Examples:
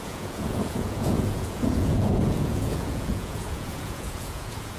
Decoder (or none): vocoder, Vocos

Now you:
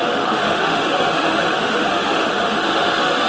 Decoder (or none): autoencoder, DAC-VAE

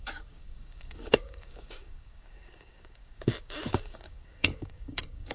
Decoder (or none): codec, DAC